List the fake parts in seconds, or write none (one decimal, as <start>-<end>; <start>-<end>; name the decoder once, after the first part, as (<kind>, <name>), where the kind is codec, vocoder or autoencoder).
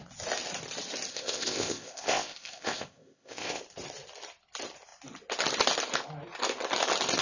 1.1-3.6 (codec, ZipCodec)